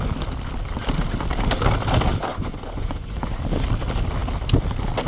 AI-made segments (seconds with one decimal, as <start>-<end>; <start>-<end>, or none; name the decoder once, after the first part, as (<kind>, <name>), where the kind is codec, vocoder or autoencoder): 2.3-3.4 (vocoder, Vocos)